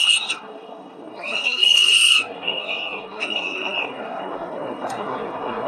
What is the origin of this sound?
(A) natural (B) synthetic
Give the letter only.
B